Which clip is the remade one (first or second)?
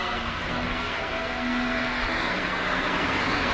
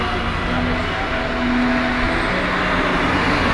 first